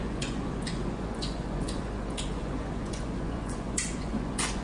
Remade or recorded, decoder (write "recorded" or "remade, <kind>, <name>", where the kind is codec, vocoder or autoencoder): remade, vocoder, Vocos